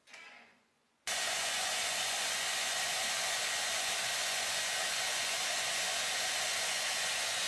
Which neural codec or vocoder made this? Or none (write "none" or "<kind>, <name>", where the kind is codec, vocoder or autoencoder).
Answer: vocoder, Vocos